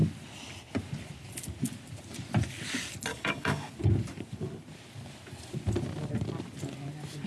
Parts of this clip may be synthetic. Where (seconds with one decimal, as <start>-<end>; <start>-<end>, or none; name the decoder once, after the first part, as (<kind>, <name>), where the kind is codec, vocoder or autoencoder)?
3.1-3.7 (codec, DAC)